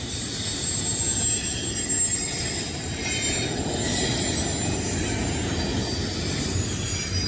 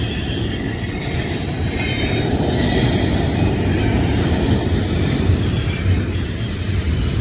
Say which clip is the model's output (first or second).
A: second